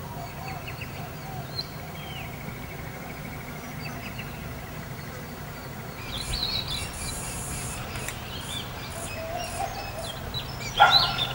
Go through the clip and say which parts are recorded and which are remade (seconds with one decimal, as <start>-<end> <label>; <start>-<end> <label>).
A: 0.0-6.4 remade; 6.4-7.1 recorded; 7.1-8.9 remade; 8.9-10.7 recorded; 10.7-11.3 remade

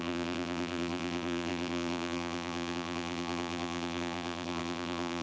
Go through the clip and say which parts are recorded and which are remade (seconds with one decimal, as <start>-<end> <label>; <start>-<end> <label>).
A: 0.0-5.2 remade

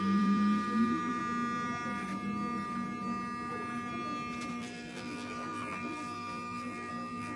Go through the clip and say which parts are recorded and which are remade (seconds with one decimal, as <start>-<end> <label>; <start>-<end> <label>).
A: 0.0-1.2 remade; 1.2-4.5 recorded; 4.5-7.4 remade